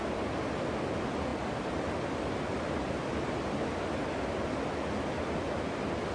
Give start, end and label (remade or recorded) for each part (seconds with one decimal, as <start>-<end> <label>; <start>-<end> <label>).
0.0-6.1 recorded